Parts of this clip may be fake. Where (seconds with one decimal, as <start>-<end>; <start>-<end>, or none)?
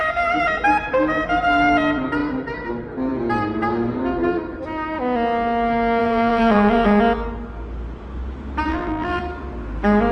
6.0-7.0; 8.7-9.2